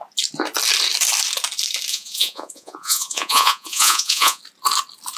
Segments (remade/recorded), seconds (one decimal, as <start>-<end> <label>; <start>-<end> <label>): 0.0-1.9 recorded; 1.9-4.4 remade; 4.4-5.2 recorded